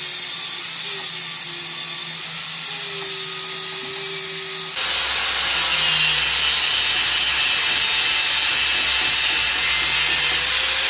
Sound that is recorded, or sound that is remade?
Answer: recorded